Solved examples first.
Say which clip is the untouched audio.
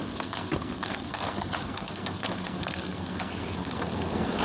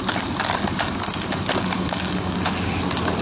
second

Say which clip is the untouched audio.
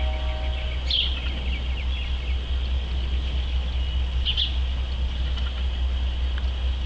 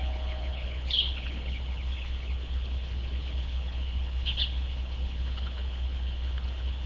first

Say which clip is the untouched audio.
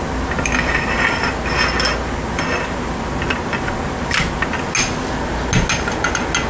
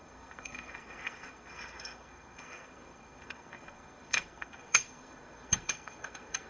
first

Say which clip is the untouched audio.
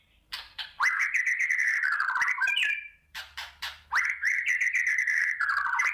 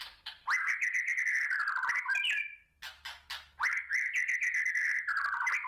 second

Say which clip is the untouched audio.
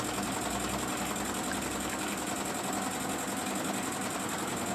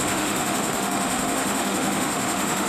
first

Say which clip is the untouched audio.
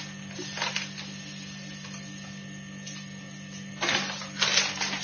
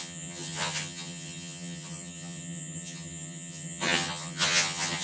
first